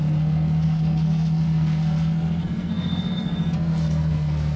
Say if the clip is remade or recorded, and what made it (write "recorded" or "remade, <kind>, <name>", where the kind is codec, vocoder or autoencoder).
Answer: remade, codec, SNAC